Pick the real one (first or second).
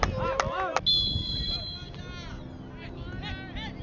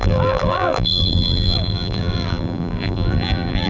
first